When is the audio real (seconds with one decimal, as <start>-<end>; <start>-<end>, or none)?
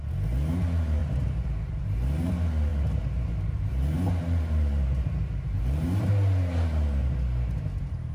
0.0-1.0; 2.3-2.7; 6.1-8.1